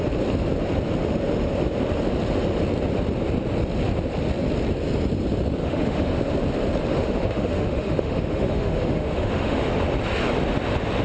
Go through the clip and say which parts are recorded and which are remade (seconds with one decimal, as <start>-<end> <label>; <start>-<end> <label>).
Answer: 0.0-5.6 recorded; 5.6-6.2 remade; 6.2-6.9 recorded; 6.9-9.7 remade; 9.7-11.0 recorded